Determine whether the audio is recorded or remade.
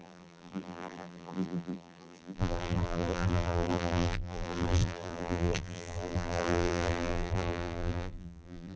remade